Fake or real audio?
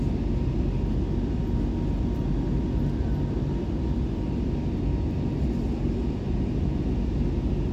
real